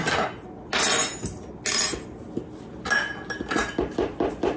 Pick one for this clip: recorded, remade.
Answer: recorded